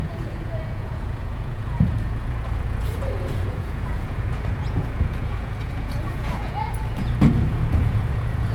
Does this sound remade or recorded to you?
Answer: remade